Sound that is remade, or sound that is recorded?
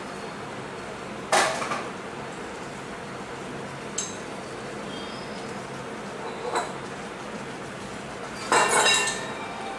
recorded